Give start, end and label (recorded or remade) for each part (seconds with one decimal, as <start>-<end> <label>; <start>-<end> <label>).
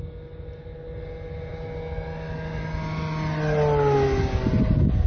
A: 0.0-5.1 recorded